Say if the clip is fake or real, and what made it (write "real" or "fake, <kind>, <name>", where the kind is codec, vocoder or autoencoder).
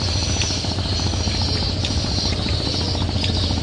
real